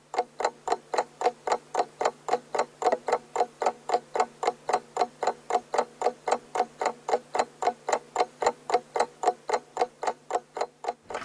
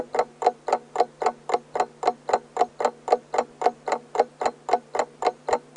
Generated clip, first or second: first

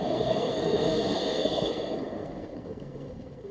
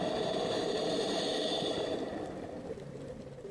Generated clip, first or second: first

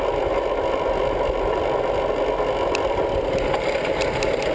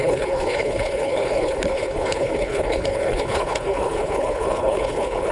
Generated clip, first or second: second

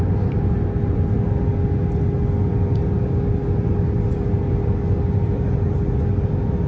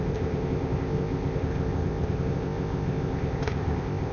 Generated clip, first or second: second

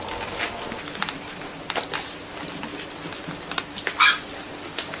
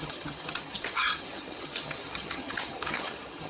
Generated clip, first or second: second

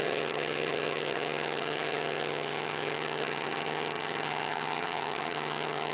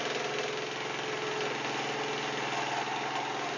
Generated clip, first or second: first